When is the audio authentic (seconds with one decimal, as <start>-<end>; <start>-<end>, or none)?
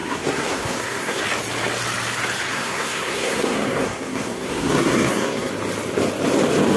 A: 1.2-2.5; 5.5-6.8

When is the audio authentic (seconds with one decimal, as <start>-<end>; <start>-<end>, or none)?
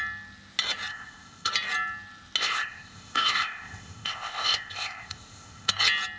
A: 0.0-0.9; 1.5-2.4; 5.7-6.2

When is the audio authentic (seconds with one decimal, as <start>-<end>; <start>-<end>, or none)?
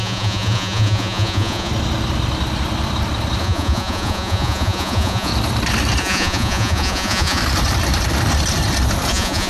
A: 1.7-3.4; 5.3-6.0; 7.4-9.1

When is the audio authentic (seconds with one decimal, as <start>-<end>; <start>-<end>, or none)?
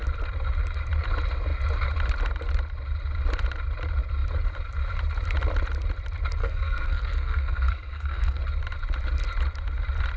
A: 0.0-6.4; 8.4-10.2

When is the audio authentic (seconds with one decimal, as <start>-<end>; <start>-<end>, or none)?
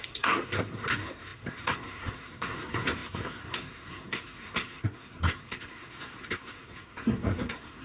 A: none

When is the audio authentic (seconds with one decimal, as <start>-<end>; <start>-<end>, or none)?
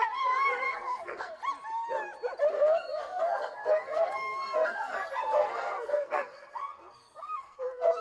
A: 1.4-2.5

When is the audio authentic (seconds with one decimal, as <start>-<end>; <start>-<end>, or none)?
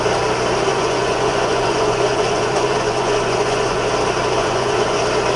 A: 0.0-0.7; 3.9-4.4; 5.0-5.4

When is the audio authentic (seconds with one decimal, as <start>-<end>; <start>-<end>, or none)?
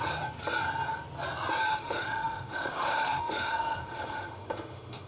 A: 0.0-1.7